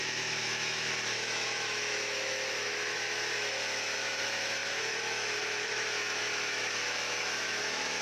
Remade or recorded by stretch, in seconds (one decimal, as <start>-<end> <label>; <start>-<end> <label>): 0.0-8.0 remade